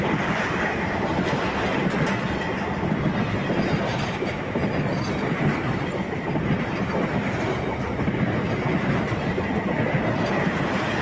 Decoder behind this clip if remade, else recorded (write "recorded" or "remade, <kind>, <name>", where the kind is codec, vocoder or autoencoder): remade, vocoder, BigVGAN v2